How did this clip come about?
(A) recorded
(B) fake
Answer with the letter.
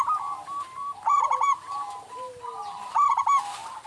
A